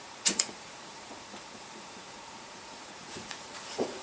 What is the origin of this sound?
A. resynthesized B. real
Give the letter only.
A